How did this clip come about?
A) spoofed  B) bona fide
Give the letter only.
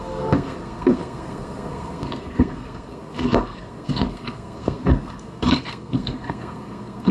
A